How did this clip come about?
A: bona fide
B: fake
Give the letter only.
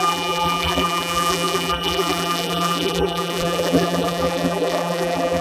B